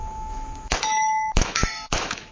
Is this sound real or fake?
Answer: fake